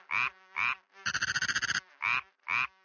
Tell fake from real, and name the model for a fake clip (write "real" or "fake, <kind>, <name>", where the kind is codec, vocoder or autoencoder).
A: real